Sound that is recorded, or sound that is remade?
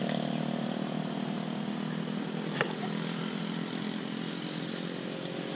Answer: recorded